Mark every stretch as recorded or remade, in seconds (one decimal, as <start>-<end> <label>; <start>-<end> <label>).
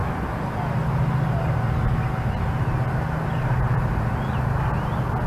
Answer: 0.0-5.3 recorded